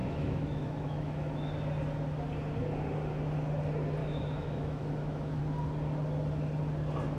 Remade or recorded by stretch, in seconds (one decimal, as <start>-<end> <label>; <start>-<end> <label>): 0.0-1.5 remade; 1.5-4.0 recorded; 4.0-5.4 remade; 5.4-7.2 recorded